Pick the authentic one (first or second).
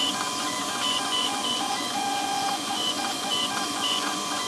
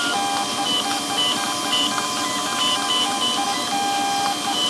second